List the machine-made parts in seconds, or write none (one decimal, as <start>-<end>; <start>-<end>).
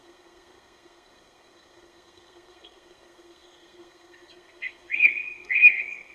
0.0-6.1